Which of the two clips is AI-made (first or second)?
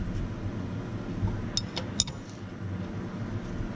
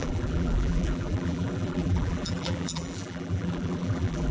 second